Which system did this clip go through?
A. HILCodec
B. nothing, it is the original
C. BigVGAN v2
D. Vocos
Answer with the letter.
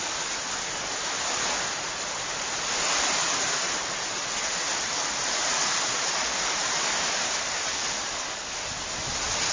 B